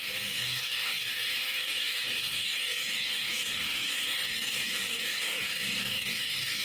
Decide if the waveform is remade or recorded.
remade